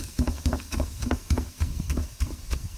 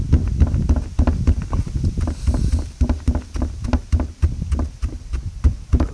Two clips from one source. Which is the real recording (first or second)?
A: second